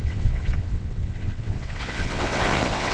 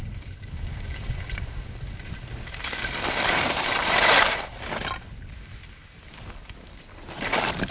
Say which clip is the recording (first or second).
second